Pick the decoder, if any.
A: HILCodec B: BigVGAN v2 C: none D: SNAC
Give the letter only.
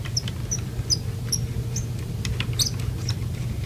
C